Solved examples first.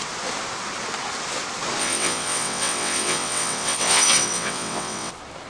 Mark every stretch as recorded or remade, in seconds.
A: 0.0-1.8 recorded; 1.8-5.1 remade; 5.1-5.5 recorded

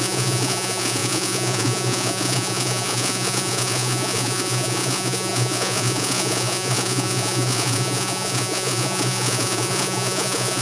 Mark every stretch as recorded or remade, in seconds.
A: 0.0-10.6 remade

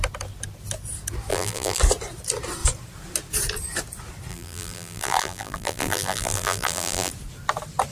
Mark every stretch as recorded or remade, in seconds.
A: 0.0-1.3 recorded; 1.3-1.8 remade; 1.8-4.3 recorded; 4.3-7.1 remade; 7.1-7.9 recorded

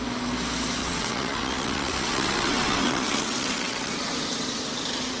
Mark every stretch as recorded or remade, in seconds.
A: 0.0-0.8 recorded; 0.8-3.9 remade; 3.9-5.2 recorded

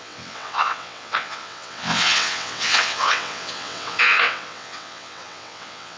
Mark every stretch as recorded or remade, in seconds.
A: 0.0-6.0 remade

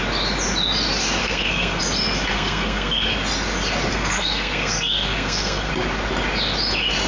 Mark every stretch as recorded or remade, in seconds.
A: 0.0-1.2 recorded; 1.2-1.8 remade; 1.8-2.3 recorded; 2.3-3.1 remade; 3.1-3.9 recorded; 3.9-5.7 remade; 5.7-7.1 recorded

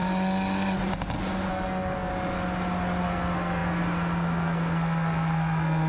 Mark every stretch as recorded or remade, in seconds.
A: 0.0-1.5 recorded; 1.5-2.1 remade; 2.1-3.0 recorded; 3.0-5.9 remade

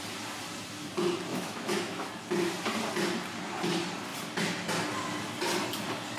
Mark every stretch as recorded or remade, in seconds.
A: 0.0-1.3 recorded; 1.3-2.1 remade; 2.1-6.2 recorded